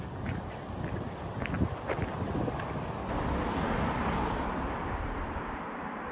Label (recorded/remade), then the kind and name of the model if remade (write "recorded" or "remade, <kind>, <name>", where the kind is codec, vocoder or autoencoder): recorded